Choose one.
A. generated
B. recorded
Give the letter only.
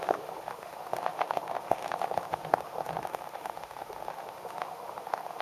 A